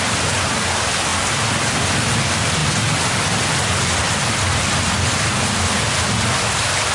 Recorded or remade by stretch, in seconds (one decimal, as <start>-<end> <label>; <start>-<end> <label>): 0.0-6.9 recorded